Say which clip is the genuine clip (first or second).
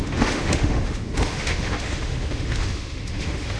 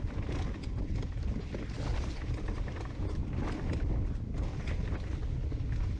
second